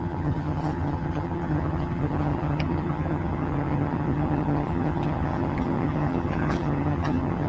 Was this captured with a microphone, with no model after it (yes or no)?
no